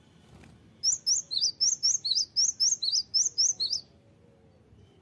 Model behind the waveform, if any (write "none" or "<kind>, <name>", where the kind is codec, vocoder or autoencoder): none